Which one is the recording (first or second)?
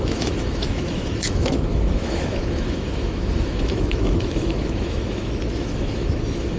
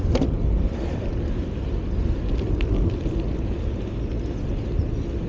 second